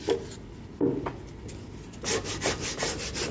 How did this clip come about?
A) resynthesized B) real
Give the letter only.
B